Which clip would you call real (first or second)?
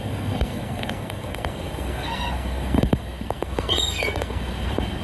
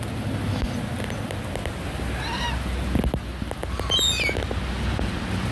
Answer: second